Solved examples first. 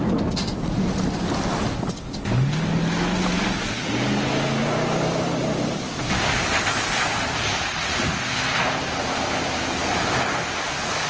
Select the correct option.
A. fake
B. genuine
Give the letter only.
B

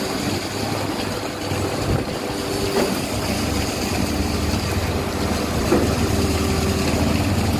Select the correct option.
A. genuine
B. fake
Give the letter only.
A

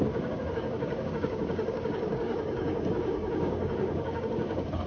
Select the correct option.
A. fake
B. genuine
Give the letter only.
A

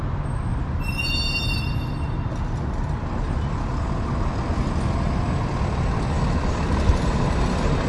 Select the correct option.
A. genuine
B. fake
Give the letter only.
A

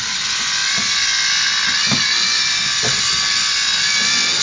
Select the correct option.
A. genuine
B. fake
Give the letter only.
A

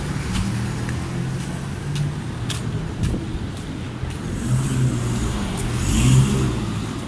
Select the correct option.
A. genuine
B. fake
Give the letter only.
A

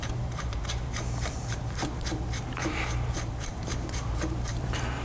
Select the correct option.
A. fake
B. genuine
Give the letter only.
A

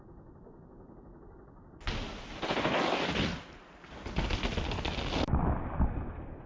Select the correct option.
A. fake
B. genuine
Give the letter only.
B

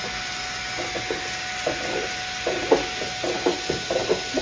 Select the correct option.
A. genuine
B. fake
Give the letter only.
A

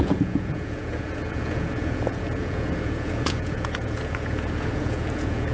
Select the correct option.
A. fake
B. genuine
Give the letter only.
A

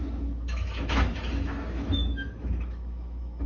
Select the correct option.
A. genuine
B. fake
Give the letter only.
B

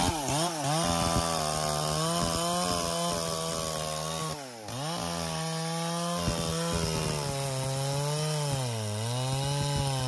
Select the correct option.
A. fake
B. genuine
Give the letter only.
B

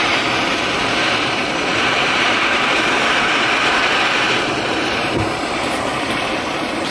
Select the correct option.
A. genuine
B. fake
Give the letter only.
B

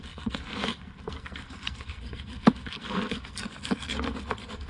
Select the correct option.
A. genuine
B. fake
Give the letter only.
B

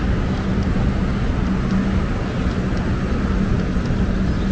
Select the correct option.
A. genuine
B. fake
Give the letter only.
A